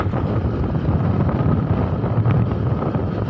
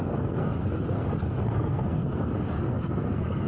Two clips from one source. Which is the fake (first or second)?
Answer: second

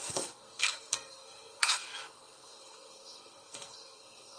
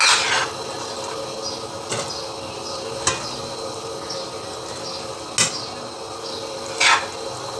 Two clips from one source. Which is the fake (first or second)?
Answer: first